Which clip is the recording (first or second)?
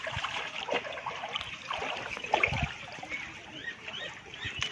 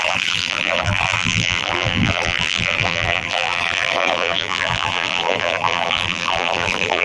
first